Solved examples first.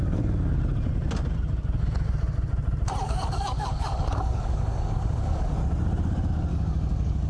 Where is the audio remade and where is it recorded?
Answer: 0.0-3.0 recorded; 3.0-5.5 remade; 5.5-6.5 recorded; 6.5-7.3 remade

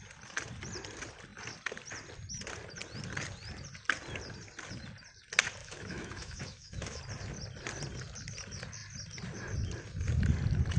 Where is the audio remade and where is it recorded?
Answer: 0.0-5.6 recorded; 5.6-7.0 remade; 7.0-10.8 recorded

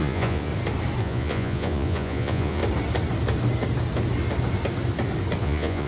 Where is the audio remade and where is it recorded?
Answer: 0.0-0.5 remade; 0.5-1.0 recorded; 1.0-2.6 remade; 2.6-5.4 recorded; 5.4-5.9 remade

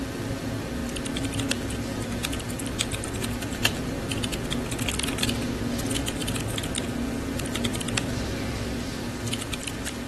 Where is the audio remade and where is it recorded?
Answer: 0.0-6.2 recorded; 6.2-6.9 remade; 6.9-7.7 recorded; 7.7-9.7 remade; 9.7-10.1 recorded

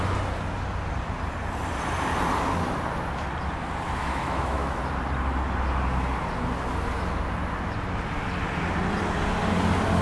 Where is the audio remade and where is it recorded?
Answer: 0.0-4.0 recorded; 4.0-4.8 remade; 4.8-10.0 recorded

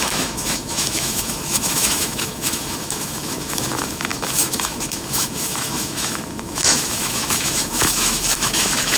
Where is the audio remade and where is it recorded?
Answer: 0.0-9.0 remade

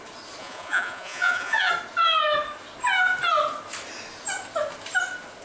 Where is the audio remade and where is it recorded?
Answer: 0.0-0.4 recorded; 0.4-1.7 remade; 1.7-5.4 recorded

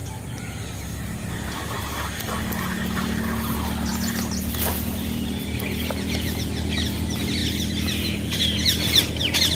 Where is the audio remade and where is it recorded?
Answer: 0.0-9.5 recorded